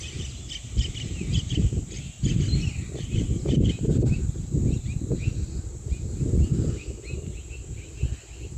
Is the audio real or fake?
real